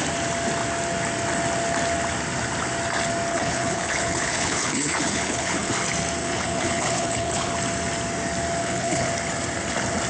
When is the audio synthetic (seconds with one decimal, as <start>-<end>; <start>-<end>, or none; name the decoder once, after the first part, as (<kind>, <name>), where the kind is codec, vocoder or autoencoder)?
3.3-5.7 (codec, HILCodec); 6.2-7.5; 8.6-9.1